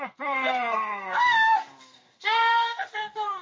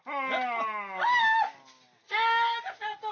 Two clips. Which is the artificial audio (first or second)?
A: first